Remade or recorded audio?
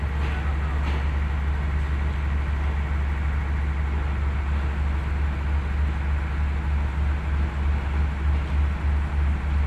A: recorded